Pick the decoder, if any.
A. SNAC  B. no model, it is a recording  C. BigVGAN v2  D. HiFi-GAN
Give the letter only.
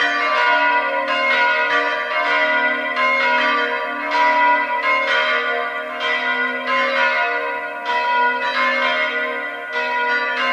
B